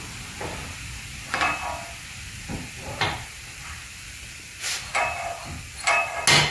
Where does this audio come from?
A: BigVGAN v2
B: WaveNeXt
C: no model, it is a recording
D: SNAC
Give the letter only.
C